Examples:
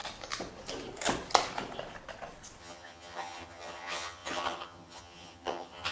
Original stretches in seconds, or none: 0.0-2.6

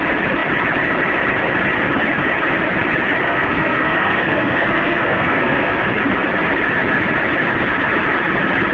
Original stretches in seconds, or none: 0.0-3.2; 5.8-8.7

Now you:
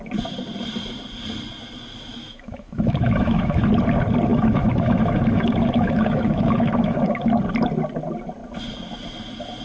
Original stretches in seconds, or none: 0.0-2.1; 3.7-4.3; 7.3-9.6

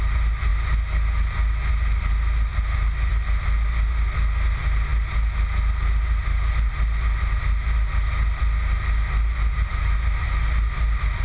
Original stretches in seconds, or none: 0.0-11.2

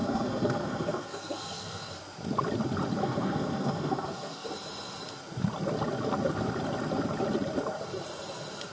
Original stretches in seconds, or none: 1.9-3.0; 4.5-8.7